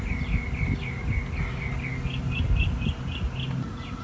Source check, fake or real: real